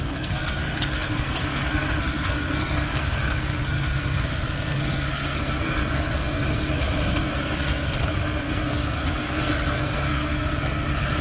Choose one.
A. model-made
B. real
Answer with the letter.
A